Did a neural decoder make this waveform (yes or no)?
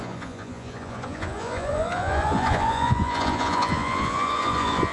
yes